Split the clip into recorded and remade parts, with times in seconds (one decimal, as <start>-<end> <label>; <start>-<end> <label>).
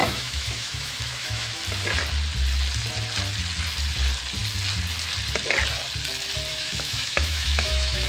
0.0-1.6 remade; 1.6-6.5 recorded; 6.5-8.1 remade